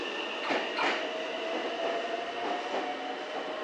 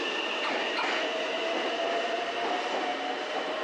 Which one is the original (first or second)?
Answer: first